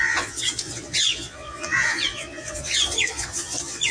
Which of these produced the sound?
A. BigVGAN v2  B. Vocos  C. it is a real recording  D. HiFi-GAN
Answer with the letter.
B